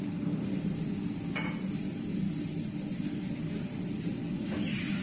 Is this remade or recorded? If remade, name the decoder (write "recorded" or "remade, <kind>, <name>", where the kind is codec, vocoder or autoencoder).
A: recorded